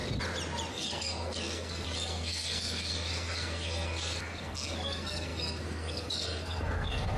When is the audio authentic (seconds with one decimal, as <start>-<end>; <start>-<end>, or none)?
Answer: 0.0-0.7